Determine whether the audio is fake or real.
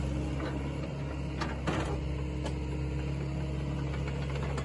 real